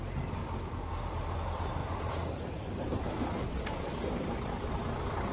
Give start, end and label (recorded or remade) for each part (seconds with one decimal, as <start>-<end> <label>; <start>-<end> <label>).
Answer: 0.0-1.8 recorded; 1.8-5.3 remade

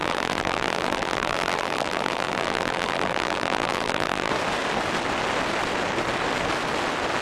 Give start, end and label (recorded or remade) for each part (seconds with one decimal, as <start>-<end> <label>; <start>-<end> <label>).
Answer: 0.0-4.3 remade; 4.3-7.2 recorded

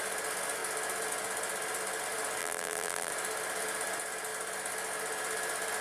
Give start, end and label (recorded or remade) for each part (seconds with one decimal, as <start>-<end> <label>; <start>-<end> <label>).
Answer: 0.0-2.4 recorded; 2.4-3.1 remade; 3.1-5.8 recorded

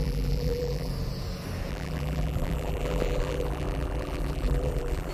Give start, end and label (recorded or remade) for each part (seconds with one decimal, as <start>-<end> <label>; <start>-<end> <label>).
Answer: 0.0-0.9 remade; 0.9-1.7 recorded; 1.7-5.1 remade

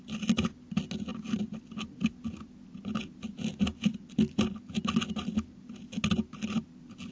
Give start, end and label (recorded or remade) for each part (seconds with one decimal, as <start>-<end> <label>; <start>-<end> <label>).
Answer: 0.0-7.1 recorded

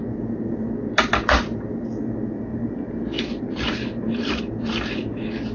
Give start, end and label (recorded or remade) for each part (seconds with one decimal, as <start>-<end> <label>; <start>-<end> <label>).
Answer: 0.0-2.5 recorded; 2.5-4.4 remade; 4.4-5.5 recorded

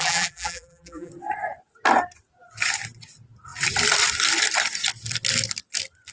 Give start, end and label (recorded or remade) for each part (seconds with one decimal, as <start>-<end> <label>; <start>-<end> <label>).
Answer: 0.0-1.1 remade; 1.1-6.1 recorded